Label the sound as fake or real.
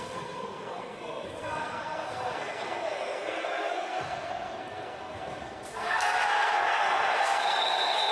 fake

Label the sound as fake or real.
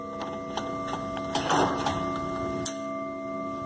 real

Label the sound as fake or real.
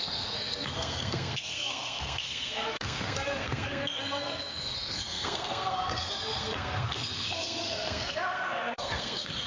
fake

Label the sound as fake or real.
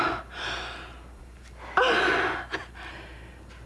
real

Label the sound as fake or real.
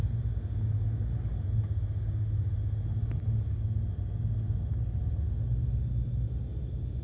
real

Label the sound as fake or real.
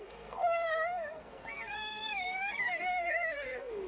fake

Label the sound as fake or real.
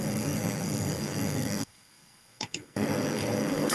fake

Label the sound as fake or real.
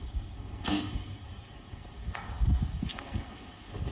fake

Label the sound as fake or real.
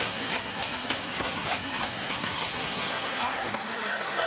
fake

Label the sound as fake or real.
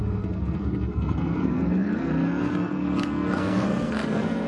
fake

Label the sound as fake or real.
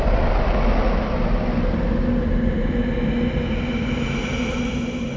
real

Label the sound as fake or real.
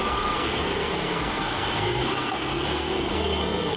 fake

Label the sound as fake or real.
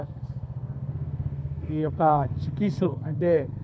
fake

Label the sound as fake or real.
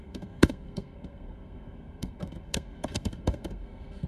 fake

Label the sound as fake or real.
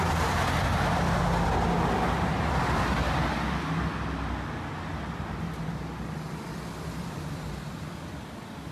real